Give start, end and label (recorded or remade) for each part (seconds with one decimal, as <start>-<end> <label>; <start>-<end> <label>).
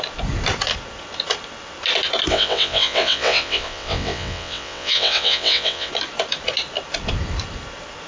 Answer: 0.0-2.3 recorded; 2.3-5.9 remade; 5.9-8.1 recorded